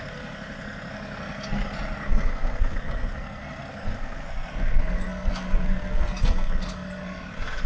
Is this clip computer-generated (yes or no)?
yes